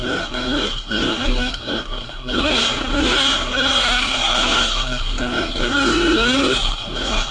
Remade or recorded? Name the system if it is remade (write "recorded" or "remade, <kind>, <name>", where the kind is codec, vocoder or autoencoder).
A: remade, codec, SNAC